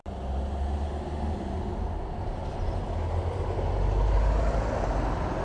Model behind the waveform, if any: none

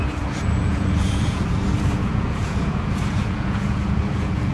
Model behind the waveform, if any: vocoder, Vocos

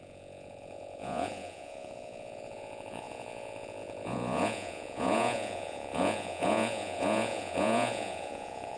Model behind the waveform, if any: vocoder, Vocos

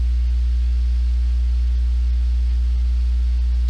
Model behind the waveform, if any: none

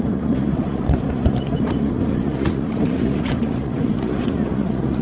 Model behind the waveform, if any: vocoder, Vocos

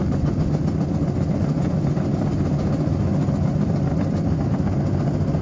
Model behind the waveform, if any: none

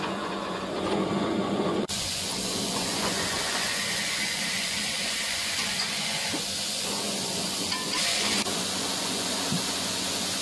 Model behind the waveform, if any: vocoder, Vocos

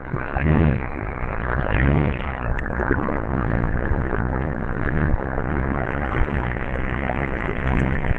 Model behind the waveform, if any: vocoder, Vocos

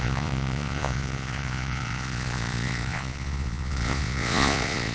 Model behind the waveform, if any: vocoder, Vocos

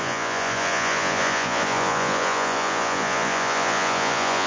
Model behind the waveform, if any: vocoder, Vocos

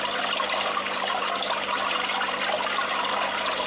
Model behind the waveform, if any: none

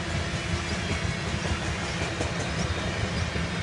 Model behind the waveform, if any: none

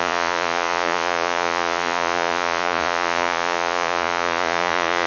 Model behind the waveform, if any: vocoder, Vocos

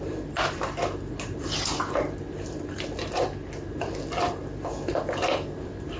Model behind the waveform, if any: none